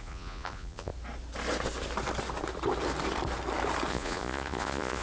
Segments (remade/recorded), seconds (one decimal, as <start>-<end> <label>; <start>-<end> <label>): 0.0-0.9 remade; 0.9-3.9 recorded; 3.9-5.0 remade